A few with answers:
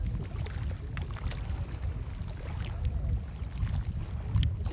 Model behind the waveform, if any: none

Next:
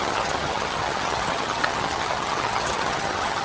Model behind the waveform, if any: vocoder, HiFi-GAN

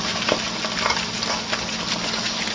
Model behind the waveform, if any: none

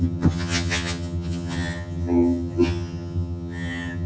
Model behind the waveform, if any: vocoder, HiFi-GAN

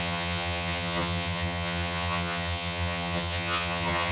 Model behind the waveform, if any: vocoder, HiFi-GAN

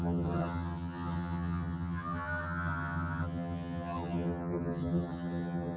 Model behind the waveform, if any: vocoder, HiFi-GAN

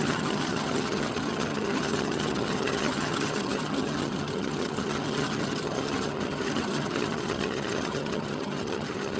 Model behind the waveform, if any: vocoder, HiFi-GAN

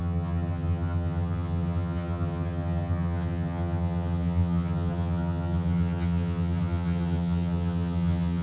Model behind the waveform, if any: vocoder, HiFi-GAN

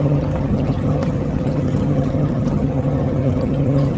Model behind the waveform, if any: vocoder, HiFi-GAN